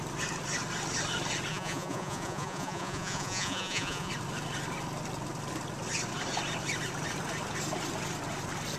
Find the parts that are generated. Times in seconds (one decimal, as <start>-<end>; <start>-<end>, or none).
1.5-4.1